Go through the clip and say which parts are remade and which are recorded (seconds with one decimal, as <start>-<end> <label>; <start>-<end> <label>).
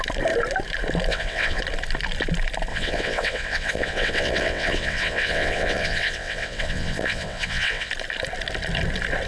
0.0-1.1 recorded; 1.1-1.6 remade; 1.6-2.7 recorded; 2.7-7.9 remade; 7.9-9.3 recorded